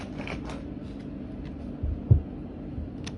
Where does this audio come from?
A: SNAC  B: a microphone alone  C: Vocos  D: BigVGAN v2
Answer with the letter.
B